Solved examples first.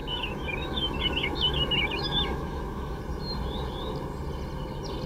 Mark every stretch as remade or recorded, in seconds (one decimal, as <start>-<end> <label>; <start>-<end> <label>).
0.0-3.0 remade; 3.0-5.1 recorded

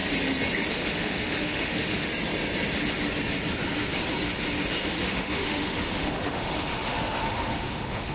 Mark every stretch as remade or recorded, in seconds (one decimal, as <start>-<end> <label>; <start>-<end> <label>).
0.0-0.7 recorded; 0.7-2.1 remade; 2.1-4.9 recorded; 4.9-8.1 remade

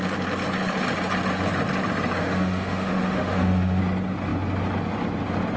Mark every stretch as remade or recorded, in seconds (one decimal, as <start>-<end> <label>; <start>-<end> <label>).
0.0-2.2 recorded; 2.2-3.8 remade; 3.8-5.6 recorded